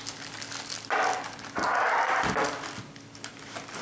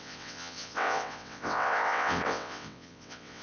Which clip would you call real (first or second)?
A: first